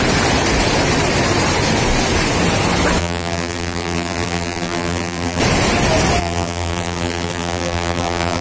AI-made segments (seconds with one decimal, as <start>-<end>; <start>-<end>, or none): 3.0-5.4; 6.2-8.4